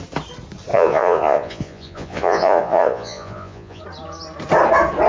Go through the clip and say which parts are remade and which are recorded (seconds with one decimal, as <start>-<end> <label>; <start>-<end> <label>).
0.0-0.7 recorded; 0.7-3.8 remade; 3.8-5.1 recorded